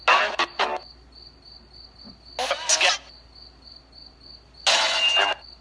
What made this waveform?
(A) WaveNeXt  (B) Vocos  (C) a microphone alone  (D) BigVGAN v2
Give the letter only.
C